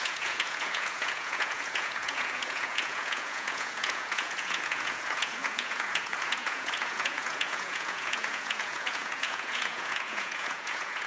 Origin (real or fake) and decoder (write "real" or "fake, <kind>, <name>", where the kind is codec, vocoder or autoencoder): fake, vocoder, Vocos